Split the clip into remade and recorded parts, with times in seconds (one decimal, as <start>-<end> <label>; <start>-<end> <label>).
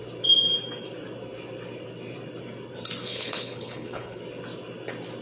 0.0-3.0 recorded; 3.0-4.2 remade; 4.2-5.2 recorded